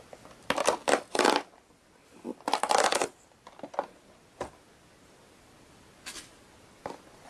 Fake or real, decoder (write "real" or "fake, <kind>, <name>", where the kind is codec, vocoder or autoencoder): real